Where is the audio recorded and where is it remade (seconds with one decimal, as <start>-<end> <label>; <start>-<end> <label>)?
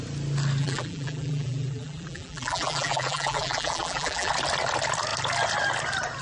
0.0-0.6 recorded; 0.6-4.3 remade; 4.3-6.2 recorded